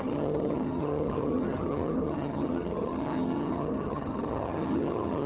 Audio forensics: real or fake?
fake